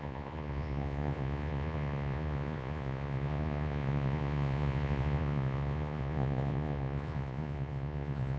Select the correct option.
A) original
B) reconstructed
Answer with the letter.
B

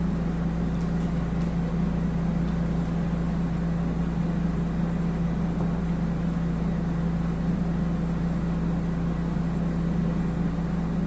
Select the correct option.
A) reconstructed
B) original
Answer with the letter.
B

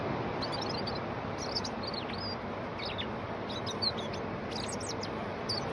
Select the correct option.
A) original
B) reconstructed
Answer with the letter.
A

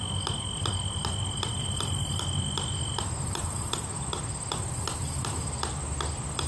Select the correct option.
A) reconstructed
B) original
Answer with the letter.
B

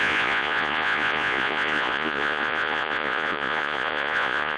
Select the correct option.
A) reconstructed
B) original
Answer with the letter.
A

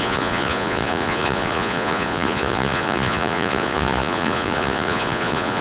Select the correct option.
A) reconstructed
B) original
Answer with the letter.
A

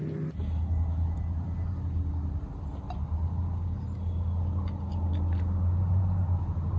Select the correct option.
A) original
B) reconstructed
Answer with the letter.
A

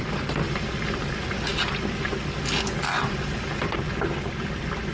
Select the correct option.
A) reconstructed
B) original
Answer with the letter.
B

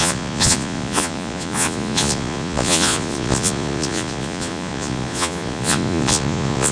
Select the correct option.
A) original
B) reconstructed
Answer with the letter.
B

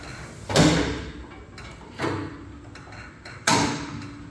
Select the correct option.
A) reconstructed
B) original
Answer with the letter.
B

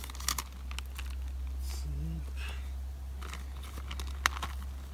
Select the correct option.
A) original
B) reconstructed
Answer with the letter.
A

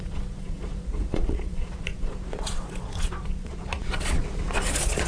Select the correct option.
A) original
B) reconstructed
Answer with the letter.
B